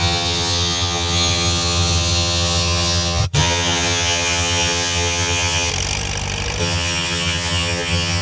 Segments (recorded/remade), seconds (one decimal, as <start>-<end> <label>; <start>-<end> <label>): 0.0-5.7 remade; 5.7-6.6 recorded; 6.6-8.2 remade